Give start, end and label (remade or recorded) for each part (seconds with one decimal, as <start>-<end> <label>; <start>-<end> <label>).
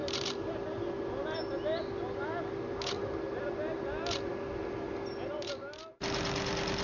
0.0-6.8 recorded